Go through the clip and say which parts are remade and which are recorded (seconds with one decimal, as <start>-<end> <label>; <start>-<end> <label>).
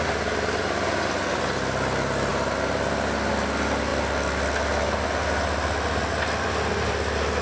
0.0-7.4 recorded